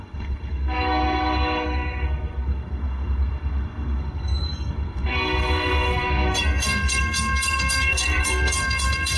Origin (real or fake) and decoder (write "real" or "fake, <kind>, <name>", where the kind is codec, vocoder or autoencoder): fake, codec, SNAC